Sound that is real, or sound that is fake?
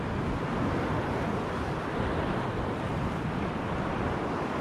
real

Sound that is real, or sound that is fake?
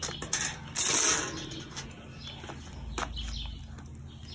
real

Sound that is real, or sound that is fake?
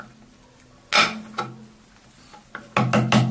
real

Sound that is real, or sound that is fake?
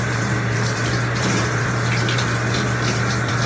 fake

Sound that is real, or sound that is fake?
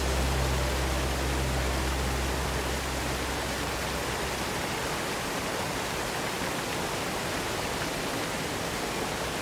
real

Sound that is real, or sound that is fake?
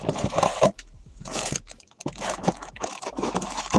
fake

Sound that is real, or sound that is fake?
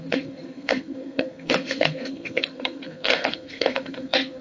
fake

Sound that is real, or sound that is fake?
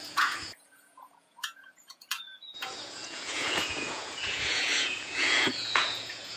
fake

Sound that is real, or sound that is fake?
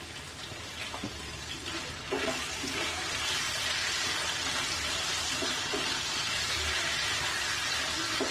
real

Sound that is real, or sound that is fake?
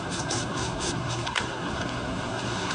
fake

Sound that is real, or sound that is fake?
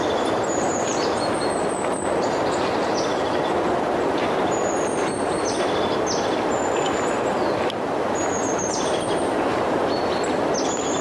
real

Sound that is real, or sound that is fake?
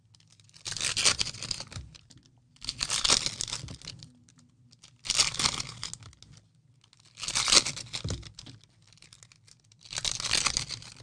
real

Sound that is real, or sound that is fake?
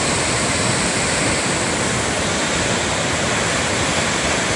real